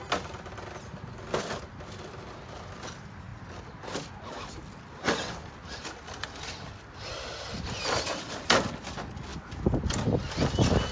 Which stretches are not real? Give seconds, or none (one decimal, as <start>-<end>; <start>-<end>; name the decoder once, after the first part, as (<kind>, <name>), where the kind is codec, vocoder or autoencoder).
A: none

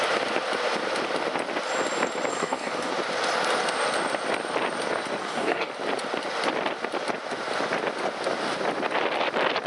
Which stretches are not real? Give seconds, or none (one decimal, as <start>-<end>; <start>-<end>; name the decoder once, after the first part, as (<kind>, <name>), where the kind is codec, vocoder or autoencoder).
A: 2.3-2.9 (codec, DAC); 5.2-5.7